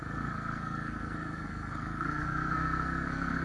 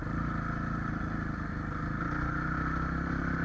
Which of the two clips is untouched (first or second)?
second